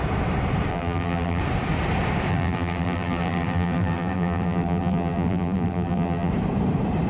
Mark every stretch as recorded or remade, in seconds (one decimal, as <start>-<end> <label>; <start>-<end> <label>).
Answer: 0.0-0.7 recorded; 0.7-1.4 remade; 1.4-2.3 recorded; 2.3-6.3 remade; 6.3-7.1 recorded